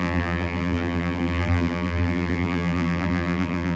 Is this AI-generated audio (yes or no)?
yes